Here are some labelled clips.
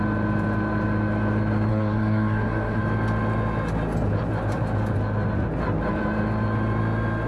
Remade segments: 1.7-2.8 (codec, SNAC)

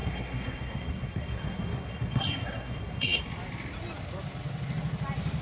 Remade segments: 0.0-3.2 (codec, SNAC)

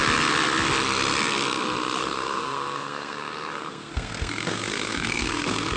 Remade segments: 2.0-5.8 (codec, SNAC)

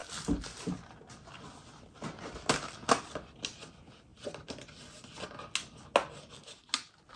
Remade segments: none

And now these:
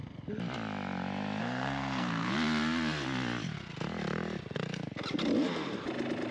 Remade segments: 1.4-2.3 (codec, SNAC)

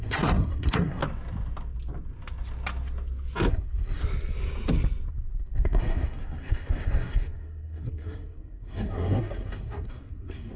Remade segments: 0.0-1.0 (codec, SNAC); 3.5-4.0; 5.1-10.6